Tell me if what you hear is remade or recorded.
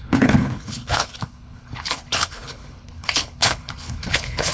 remade